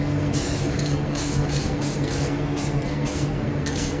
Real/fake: fake